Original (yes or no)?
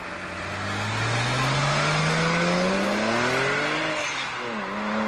yes